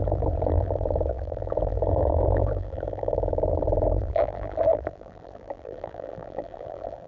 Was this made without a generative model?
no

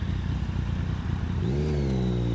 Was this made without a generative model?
yes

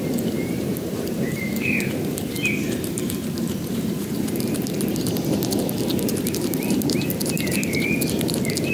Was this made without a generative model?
no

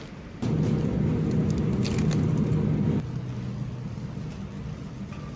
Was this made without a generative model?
yes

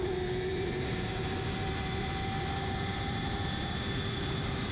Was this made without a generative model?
no